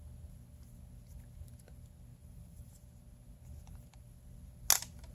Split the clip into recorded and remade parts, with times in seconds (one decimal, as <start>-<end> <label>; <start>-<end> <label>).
0.0-2.2 recorded; 2.2-2.7 remade; 2.7-5.1 recorded